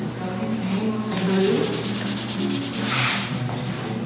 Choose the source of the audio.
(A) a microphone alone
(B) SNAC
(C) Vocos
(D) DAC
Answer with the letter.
A